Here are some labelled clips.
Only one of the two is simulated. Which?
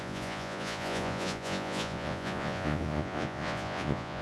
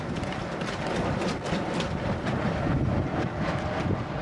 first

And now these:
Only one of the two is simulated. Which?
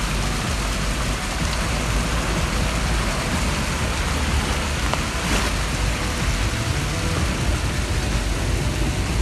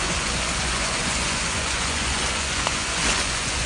second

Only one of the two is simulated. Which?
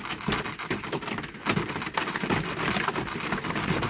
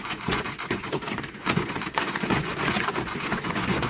second